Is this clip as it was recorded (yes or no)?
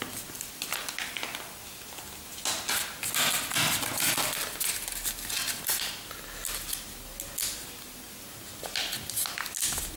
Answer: yes